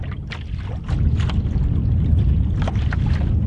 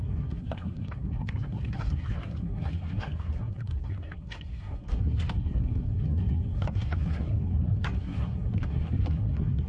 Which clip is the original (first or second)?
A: first